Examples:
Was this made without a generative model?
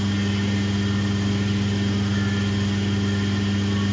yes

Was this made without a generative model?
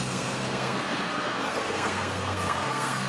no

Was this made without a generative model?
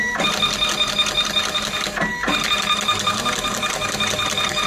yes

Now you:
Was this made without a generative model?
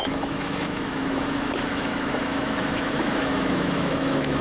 no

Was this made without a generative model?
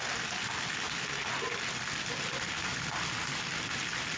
yes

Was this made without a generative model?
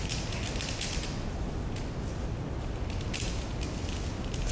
yes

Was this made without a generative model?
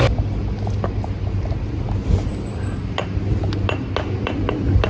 yes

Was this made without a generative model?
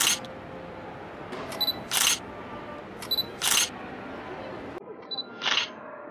yes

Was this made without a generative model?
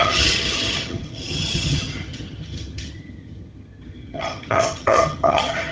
no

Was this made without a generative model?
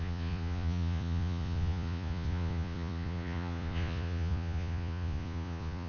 no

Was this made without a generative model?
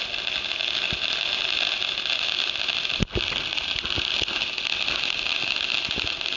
yes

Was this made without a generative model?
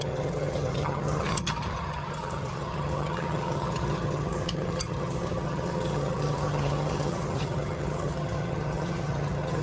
no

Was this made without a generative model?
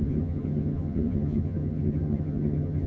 no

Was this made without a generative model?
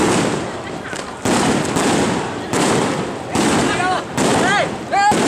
yes